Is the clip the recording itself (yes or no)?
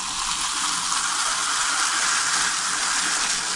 yes